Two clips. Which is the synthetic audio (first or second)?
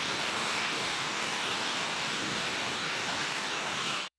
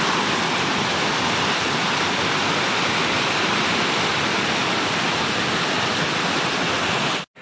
first